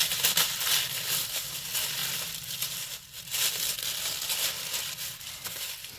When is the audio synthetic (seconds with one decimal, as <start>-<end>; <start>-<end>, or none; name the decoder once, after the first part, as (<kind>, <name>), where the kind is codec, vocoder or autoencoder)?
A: none